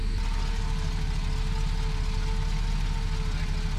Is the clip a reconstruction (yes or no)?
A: no